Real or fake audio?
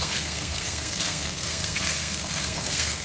fake